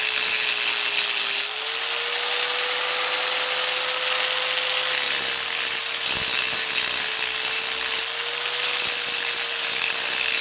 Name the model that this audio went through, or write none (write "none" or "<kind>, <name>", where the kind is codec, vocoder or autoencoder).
none